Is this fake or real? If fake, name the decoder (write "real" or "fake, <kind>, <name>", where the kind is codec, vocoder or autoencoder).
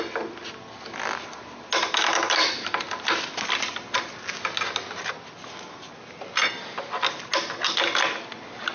real